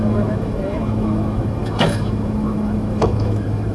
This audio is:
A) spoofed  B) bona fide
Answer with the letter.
A